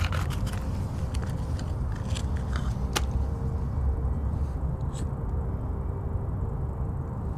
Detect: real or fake real